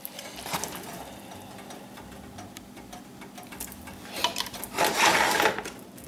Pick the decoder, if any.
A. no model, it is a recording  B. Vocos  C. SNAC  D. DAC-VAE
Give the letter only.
A